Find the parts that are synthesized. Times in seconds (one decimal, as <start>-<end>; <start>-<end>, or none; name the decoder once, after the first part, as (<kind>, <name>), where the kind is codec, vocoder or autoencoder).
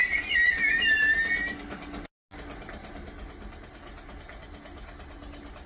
none